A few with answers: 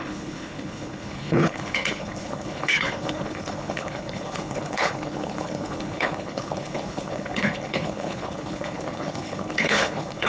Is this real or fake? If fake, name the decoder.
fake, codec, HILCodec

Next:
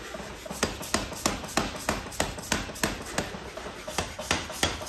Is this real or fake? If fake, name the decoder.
real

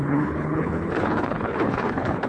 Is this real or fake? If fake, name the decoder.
fake, codec, HILCodec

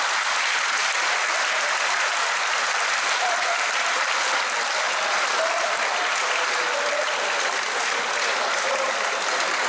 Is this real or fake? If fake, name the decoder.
real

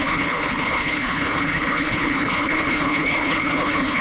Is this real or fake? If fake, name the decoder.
fake, codec, HILCodec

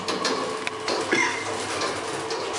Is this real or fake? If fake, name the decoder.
real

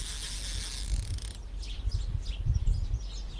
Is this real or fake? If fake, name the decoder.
real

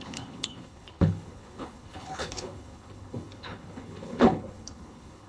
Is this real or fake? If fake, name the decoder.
fake, codec, HILCodec